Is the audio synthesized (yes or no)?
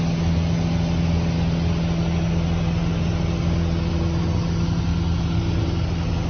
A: no